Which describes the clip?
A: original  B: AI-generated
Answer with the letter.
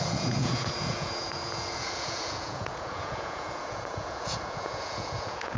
B